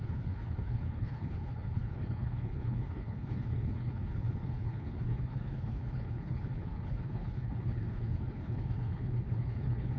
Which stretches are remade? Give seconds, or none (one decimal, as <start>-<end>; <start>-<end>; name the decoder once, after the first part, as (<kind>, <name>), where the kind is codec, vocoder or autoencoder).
0.0-10.0 (codec, HILCodec)